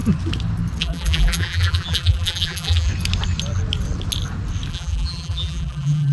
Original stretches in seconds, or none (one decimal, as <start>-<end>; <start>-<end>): 0.0-0.8; 2.9-4.7